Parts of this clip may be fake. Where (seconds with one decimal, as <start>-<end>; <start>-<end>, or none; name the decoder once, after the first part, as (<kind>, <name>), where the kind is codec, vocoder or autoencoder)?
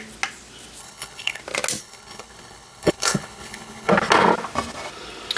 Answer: 0.8-1.4 (codec, HILCodec); 1.8-3.9